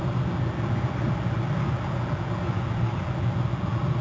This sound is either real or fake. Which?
real